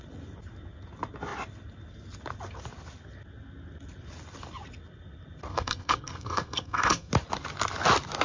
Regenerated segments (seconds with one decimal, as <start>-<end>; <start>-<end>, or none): 5.5-7.1